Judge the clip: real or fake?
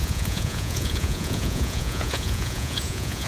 fake